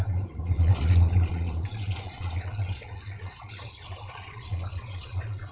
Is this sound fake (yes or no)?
yes